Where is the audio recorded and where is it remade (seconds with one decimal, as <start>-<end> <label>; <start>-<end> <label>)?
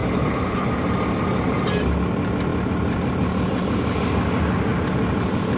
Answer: 0.0-0.7 remade; 0.7-5.6 recorded